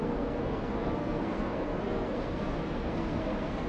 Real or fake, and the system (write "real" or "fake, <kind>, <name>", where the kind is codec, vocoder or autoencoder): fake, codec, SNAC